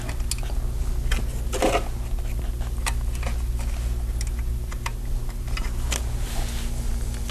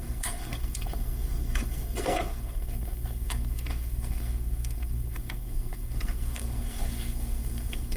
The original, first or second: first